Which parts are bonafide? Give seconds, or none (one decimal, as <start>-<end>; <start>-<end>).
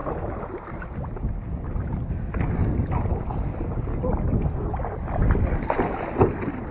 0.0-6.7